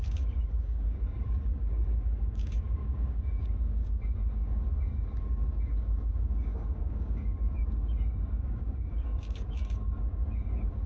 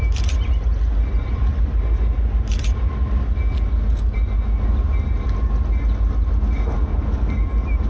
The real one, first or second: second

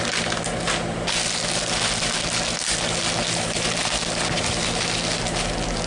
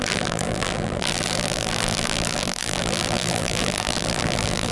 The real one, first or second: first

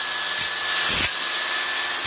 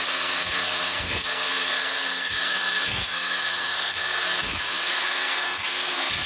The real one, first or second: first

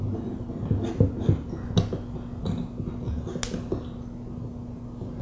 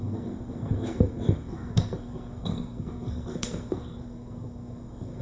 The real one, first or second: first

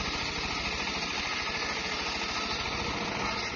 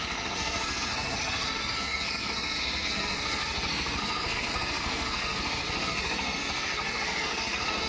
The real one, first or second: first